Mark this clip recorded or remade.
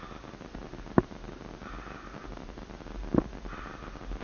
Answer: recorded